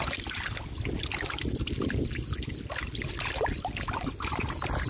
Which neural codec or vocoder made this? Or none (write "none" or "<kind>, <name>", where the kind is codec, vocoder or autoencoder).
none